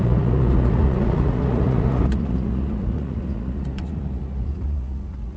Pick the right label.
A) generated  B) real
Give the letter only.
A